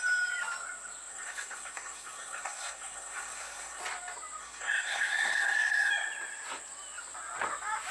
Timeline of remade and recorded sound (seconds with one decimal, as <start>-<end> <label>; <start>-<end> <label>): 0.0-1.1 recorded; 1.1-3.8 remade; 3.8-4.4 recorded; 4.4-5.9 remade; 5.9-7.9 recorded